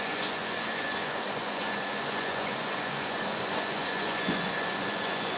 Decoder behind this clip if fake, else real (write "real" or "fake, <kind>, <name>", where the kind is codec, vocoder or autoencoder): fake, vocoder, Vocos